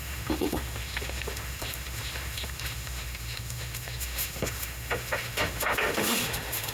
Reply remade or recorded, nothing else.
remade